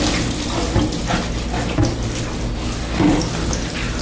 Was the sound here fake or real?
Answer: real